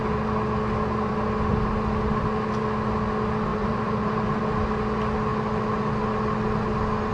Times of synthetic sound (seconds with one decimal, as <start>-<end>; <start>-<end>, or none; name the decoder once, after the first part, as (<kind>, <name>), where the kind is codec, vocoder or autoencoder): 3.5-4.4 (vocoder, BigVGAN v2)